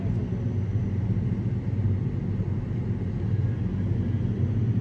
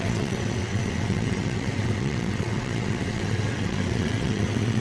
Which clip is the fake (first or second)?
second